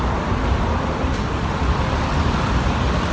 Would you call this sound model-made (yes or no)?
no